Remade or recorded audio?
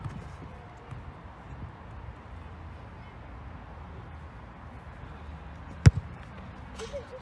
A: recorded